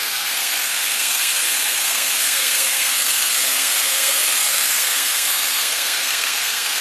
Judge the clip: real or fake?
fake